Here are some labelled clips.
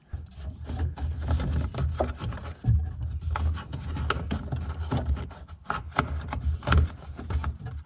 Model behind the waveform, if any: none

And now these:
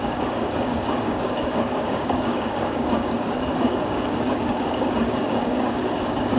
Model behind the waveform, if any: codec, DAC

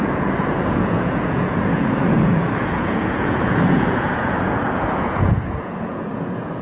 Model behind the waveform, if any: vocoder, Vocos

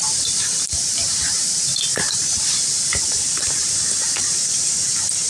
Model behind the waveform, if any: vocoder, BigVGAN v2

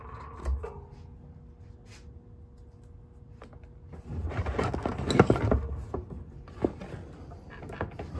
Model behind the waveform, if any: none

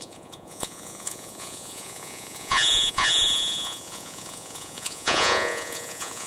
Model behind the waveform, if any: vocoder, Vocos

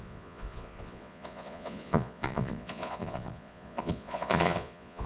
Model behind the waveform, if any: vocoder, Vocos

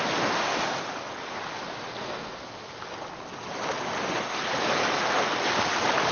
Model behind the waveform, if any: none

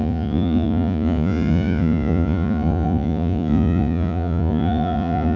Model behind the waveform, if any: vocoder, Vocos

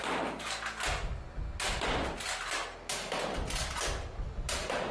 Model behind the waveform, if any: none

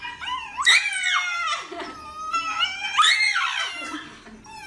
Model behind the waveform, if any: none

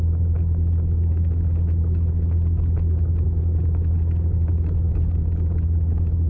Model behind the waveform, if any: none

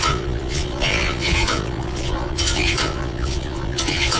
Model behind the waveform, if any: vocoder, Vocos